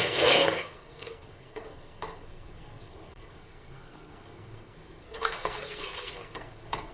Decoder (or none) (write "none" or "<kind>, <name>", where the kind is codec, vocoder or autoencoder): codec, SNAC